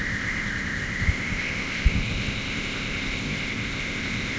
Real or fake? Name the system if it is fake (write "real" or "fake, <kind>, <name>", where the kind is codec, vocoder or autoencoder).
fake, codec, ZipCodec